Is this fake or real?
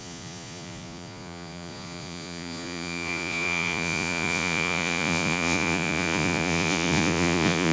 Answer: fake